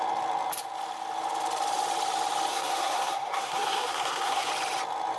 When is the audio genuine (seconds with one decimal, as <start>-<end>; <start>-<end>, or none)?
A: 0.0-2.5; 4.5-5.2